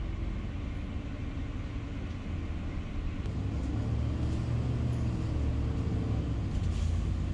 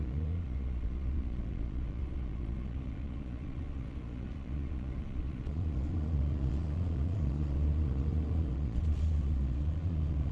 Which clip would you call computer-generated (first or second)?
second